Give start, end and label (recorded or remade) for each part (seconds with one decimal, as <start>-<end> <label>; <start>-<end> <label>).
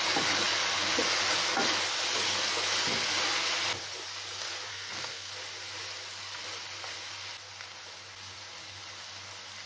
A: 0.0-4.7 recorded; 4.7-5.3 remade; 5.3-9.7 recorded